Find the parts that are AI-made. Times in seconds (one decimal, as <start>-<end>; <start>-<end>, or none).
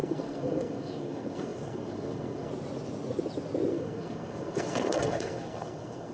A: 0.0-2.5; 3.7-6.1